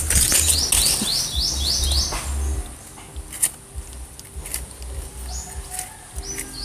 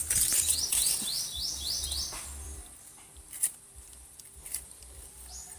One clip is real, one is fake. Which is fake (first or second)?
second